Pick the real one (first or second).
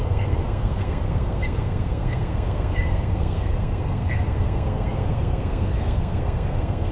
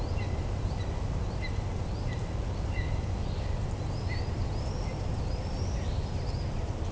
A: second